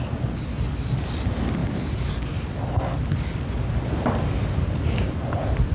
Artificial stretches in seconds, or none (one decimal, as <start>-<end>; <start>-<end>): 1.6-4.9